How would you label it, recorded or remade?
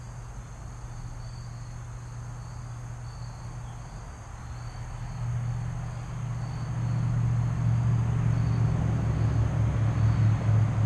recorded